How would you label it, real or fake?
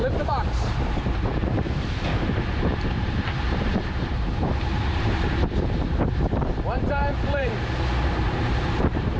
fake